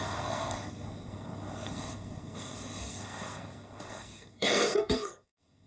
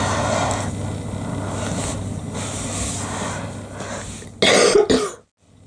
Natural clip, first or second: second